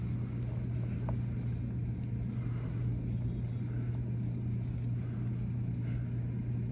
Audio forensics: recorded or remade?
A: recorded